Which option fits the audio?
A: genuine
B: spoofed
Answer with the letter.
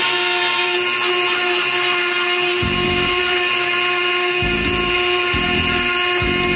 A